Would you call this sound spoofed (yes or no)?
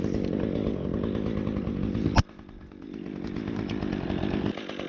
no